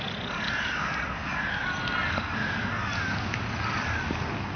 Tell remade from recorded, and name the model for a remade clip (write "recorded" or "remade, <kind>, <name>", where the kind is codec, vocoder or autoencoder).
recorded